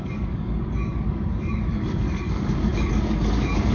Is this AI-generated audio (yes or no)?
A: yes